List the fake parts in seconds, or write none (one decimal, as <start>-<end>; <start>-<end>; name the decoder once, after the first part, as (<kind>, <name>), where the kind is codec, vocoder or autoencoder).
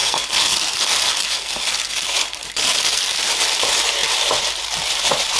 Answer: 0.0-3.2 (codec, SNAC)